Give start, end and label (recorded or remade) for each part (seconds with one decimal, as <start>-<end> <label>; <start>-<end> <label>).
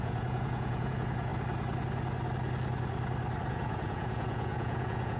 0.0-1.3 remade; 1.3-3.5 recorded; 3.5-5.2 remade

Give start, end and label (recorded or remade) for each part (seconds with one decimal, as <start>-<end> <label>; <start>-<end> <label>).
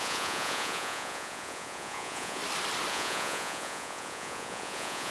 0.0-2.4 remade; 2.4-2.9 recorded; 2.9-5.1 remade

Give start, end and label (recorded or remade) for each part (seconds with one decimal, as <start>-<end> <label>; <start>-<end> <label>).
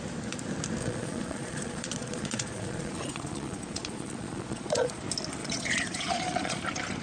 0.0-0.8 recorded; 0.8-5.0 remade; 5.0-5.4 recorded; 5.4-6.6 remade; 6.6-7.0 recorded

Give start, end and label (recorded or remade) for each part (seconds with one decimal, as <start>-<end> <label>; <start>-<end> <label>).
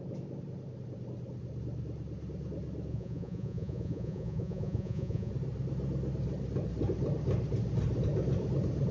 0.0-2.9 recorded; 2.9-5.3 remade; 5.3-8.9 recorded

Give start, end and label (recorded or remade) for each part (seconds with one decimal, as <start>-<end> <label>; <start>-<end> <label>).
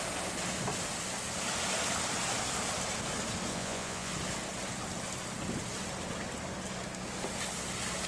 0.0-3.5 recorded; 3.5-4.1 remade; 4.1-8.1 recorded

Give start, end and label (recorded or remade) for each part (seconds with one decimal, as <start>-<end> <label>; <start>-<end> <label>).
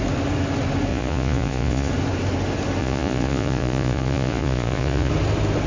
0.0-0.9 recorded; 0.9-1.9 remade; 1.9-2.8 recorded; 2.8-5.1 remade; 5.1-5.7 recorded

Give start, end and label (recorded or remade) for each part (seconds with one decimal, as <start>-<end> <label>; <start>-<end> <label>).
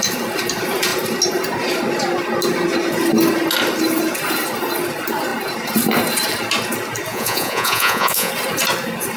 0.0-7.1 recorded; 7.1-8.3 remade; 8.3-9.2 recorded